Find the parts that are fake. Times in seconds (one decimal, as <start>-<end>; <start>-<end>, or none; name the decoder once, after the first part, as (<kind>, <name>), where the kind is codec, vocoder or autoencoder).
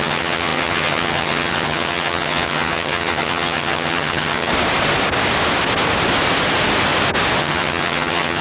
0.0-4.5 (vocoder, HiFi-GAN); 7.4-8.4